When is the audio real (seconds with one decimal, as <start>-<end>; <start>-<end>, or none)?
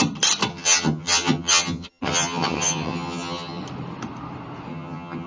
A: 0.0-0.5; 3.6-4.7